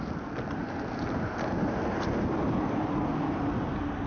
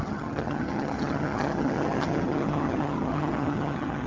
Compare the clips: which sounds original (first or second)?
first